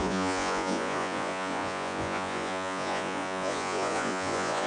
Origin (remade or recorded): remade